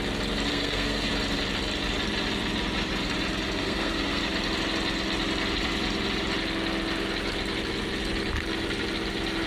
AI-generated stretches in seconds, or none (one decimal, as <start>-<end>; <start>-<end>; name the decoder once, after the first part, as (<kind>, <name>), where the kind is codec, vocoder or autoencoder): 0.5-1.1 (codec, SNAC); 3.6-4.2

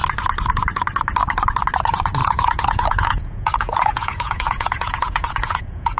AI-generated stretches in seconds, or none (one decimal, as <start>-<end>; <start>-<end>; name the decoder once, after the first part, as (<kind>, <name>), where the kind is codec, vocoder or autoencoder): 2.2-6.0 (vocoder, Vocos)

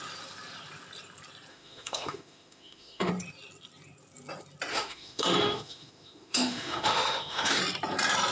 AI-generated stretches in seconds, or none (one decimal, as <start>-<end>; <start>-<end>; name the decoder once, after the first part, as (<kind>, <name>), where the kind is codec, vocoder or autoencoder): 1.5-3.1 (autoencoder, DAC-VAE); 4.7-7.6

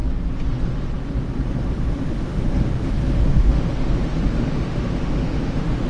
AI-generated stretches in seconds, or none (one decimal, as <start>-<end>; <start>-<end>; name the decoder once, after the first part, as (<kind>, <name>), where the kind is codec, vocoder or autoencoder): 2.3-5.9 (autoencoder, DAC-VAE)

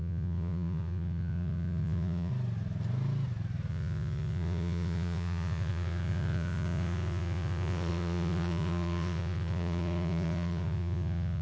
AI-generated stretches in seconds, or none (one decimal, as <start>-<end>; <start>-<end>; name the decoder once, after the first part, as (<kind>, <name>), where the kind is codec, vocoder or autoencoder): 0.0-2.3 (vocoder, Vocos); 3.7-11.4

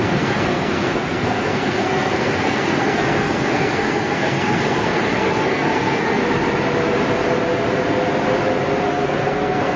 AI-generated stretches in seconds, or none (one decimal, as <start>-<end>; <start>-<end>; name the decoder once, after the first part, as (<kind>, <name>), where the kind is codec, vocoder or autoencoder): 0.0-6.2 (codec, SNAC); 8.9-9.8